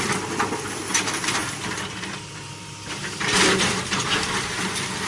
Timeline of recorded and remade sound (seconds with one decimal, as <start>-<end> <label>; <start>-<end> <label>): 0.0-1.4 remade; 1.4-2.9 recorded; 2.9-5.1 remade